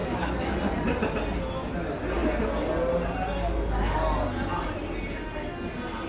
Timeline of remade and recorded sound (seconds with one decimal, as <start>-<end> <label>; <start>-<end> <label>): 0.0-0.5 remade; 0.5-6.1 recorded